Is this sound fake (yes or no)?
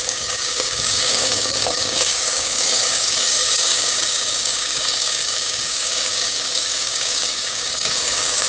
yes